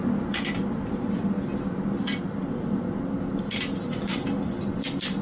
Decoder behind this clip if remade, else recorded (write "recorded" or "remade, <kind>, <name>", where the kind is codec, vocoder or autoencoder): recorded